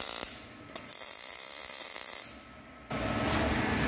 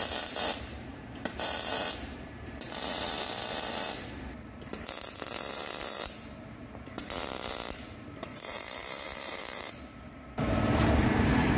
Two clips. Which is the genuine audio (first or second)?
first